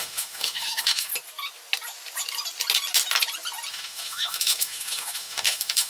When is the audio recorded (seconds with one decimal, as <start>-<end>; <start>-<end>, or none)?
1.1-3.7